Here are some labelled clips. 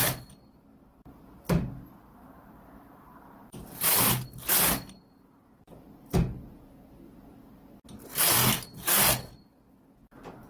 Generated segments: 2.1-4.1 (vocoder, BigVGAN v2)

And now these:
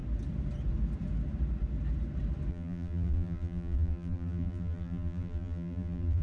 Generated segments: 2.5-6.2 (vocoder, BigVGAN v2)

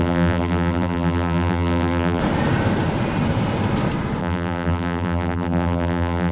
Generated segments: 0.0-2.2 (vocoder, BigVGAN v2); 4.2-6.3

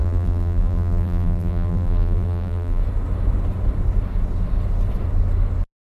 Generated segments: 0.0-2.8 (vocoder, BigVGAN v2)

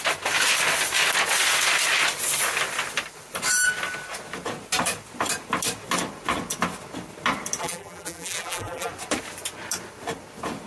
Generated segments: 7.6-8.9 (vocoder, BigVGAN v2)